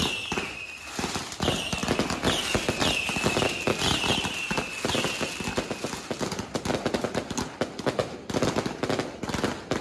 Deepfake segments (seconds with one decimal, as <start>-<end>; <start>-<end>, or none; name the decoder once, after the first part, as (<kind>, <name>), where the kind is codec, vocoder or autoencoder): none